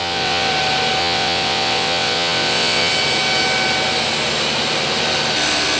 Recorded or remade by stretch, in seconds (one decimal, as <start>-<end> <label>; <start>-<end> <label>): 0.0-0.5 remade; 0.5-1.0 recorded; 1.0-2.9 remade; 2.9-5.8 recorded